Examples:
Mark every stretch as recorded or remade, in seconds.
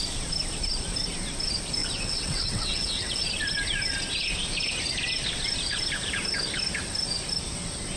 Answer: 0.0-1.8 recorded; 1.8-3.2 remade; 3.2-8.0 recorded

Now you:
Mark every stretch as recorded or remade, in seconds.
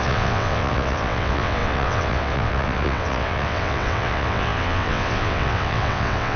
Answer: 0.0-6.4 remade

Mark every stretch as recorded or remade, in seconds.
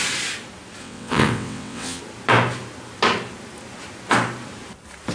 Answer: 0.0-0.8 recorded; 0.8-2.0 remade; 2.0-5.1 recorded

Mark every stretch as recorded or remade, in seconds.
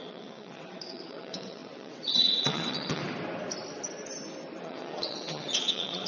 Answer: 0.0-3.0 remade; 3.0-4.6 recorded; 4.6-6.1 remade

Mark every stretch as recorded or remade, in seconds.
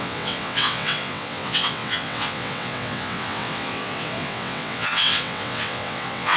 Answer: 0.0-6.4 remade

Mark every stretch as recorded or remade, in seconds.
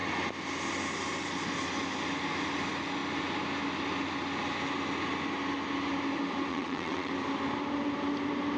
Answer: 0.0-6.5 recorded; 6.5-7.1 remade; 7.1-8.6 recorded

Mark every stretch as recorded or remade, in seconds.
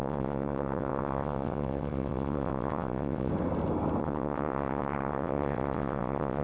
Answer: 0.0-3.3 remade; 3.3-4.0 recorded; 4.0-6.4 remade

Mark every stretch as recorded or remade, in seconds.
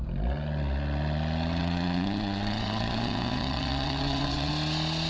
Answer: 0.0-1.6 recorded; 1.6-4.5 remade; 4.5-5.1 recorded